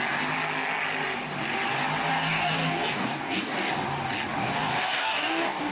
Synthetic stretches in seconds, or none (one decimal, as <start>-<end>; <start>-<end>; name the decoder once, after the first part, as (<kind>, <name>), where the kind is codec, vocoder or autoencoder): 2.1-3.7 (codec, DAC); 4.4-5.7